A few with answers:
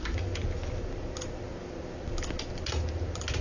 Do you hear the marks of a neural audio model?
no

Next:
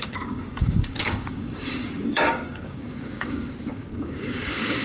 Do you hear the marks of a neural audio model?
yes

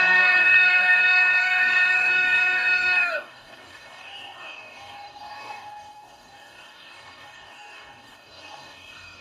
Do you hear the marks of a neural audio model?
yes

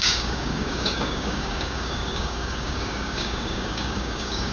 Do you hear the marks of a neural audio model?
yes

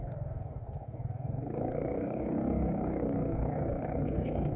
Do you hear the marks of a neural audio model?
yes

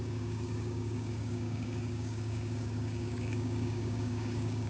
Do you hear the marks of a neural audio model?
yes